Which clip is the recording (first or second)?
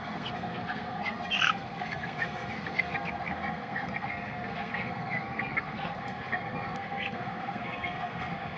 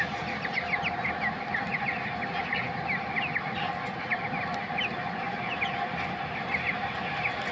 second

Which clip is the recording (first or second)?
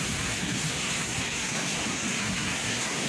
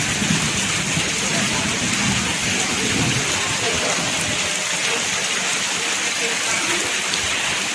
second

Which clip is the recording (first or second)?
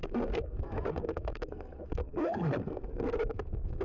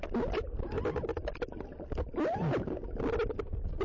second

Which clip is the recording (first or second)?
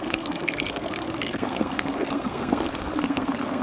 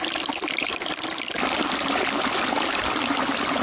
second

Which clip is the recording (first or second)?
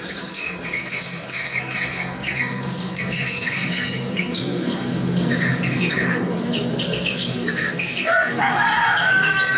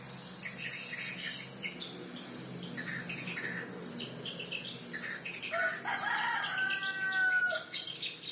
second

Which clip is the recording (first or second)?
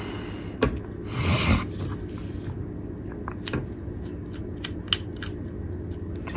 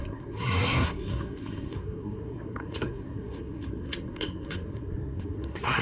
first